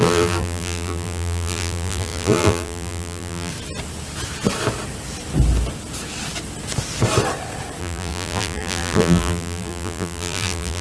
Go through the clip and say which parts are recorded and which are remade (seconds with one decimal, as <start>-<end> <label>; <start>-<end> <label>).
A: 0.0-3.5 remade; 3.5-7.8 recorded; 7.8-10.8 remade